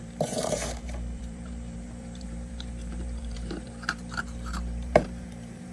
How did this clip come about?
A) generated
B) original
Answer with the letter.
A